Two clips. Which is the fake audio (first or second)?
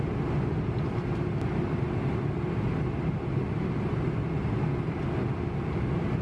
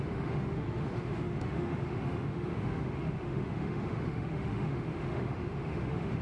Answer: second